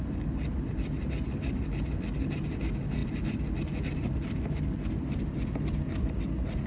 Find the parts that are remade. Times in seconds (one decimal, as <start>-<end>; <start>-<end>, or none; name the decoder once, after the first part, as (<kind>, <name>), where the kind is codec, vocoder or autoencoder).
none